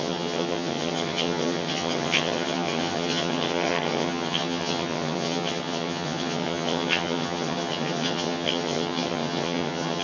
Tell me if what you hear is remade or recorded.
remade